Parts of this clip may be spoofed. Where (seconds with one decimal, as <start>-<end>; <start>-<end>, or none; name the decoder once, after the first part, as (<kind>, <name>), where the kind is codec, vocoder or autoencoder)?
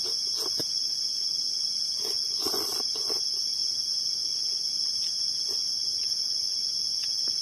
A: none